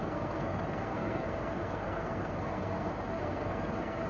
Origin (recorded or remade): remade